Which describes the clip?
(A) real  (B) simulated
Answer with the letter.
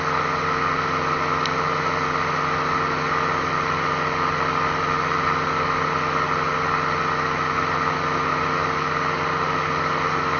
A